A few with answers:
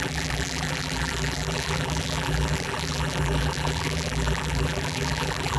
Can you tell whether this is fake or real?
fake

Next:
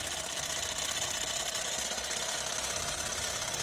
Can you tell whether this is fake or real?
real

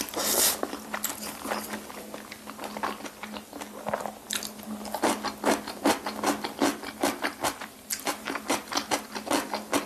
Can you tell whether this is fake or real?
real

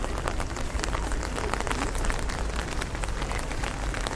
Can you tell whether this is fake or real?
real